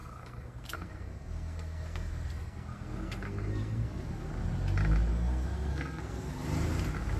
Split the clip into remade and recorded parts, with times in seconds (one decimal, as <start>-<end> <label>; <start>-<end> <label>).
0.0-4.3 remade; 4.3-5.1 recorded; 5.1-6.3 remade; 6.3-7.2 recorded